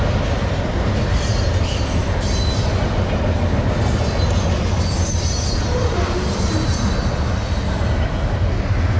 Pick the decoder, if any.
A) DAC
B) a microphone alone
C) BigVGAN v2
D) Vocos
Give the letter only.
B